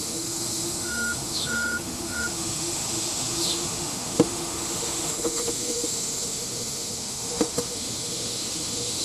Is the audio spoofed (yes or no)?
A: yes